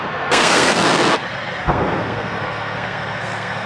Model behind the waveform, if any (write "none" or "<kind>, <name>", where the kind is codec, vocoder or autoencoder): codec, SNAC